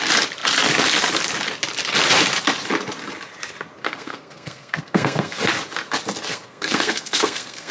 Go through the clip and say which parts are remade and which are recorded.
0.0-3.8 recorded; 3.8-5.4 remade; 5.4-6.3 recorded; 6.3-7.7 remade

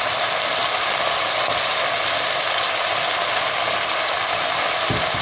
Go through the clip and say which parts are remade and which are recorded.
0.0-5.2 recorded

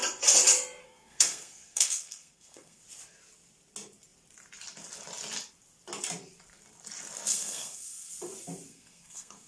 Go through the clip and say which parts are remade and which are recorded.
0.0-0.8 recorded; 0.8-2.8 remade; 2.8-7.3 recorded; 7.3-8.1 remade; 8.1-8.7 recorded; 8.7-9.5 remade